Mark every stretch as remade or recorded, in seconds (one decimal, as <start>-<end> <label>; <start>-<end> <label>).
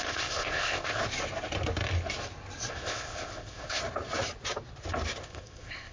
0.0-1.0 remade; 1.0-2.7 recorded; 2.7-3.8 remade; 3.8-5.2 recorded; 5.2-5.9 remade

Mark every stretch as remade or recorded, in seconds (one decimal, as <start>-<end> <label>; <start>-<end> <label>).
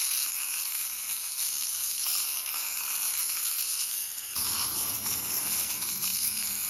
0.0-6.7 remade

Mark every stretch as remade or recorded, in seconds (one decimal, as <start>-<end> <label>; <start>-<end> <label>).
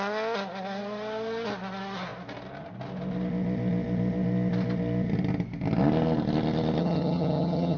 0.0-6.8 recorded; 6.8-7.8 remade